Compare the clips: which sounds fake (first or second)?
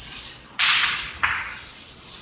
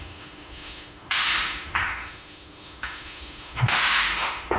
second